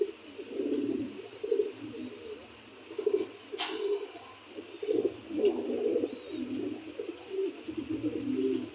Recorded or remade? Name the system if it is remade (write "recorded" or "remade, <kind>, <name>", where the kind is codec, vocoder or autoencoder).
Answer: recorded